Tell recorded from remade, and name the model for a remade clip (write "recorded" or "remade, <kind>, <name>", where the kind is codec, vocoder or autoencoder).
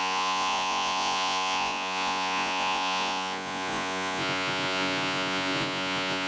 remade, vocoder, Vocos